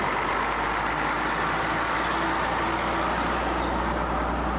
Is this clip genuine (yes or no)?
yes